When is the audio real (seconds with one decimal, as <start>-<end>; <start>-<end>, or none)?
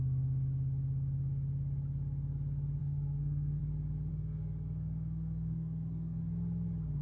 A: 0.0-2.8; 3.6-4.1; 6.2-7.0